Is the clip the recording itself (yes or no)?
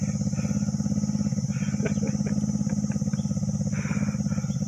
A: yes